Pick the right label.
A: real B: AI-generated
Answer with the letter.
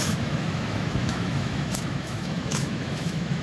B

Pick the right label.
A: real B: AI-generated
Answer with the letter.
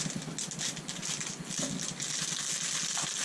A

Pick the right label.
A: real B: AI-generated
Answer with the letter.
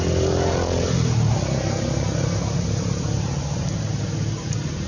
A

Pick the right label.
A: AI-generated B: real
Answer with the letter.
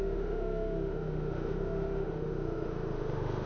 A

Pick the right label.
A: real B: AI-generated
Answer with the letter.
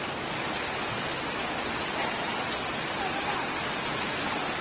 A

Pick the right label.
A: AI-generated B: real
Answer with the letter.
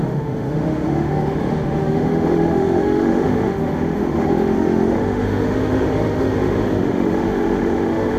A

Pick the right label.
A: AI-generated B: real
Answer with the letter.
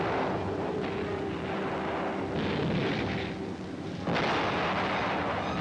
B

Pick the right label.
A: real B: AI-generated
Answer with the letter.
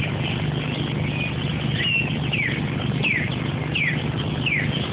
A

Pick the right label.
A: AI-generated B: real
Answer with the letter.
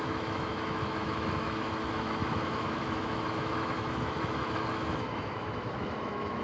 A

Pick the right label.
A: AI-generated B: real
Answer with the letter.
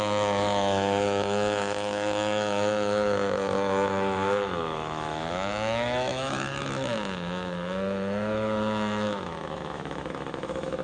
A